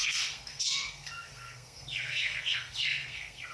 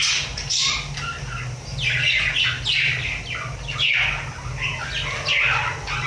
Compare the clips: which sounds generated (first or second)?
first